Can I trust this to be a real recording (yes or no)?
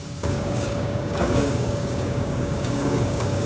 no